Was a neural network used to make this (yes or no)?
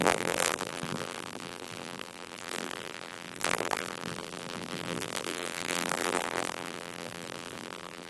yes